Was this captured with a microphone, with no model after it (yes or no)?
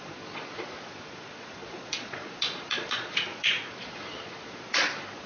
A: no